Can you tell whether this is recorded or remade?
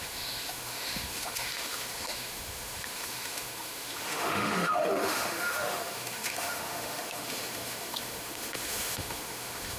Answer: remade